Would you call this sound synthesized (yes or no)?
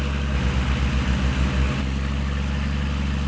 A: no